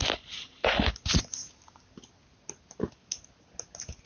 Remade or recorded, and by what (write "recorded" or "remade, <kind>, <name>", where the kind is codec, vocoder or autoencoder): recorded